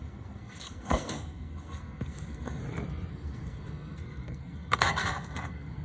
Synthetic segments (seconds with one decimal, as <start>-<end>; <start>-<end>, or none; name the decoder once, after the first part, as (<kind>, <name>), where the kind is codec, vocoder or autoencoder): 0.0-2.6 (codec, SNAC); 3.1-5.8